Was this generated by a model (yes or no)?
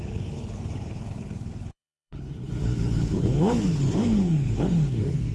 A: yes